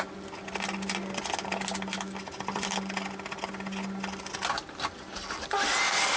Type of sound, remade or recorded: recorded